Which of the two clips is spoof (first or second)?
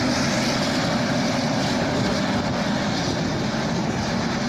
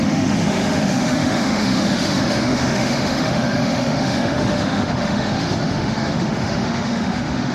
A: second